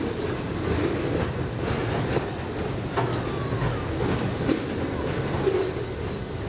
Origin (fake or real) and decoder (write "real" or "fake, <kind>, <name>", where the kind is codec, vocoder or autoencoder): real